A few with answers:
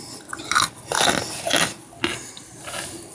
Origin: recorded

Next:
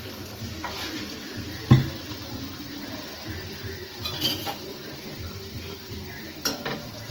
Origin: remade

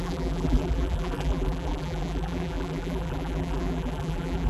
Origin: remade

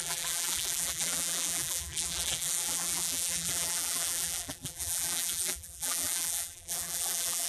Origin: remade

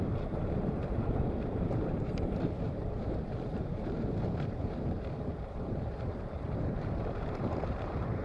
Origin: remade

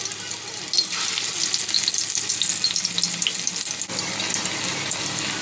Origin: recorded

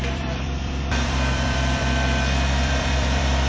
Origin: remade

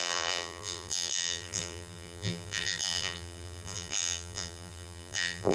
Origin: remade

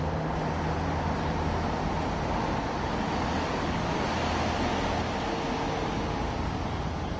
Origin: recorded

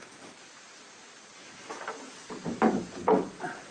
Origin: recorded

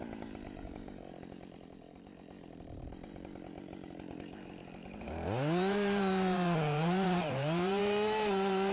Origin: remade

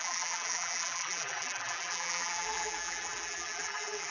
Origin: remade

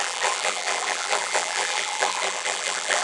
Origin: remade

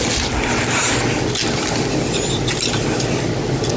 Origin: recorded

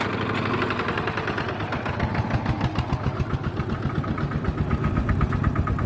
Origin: recorded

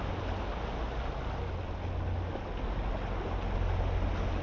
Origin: recorded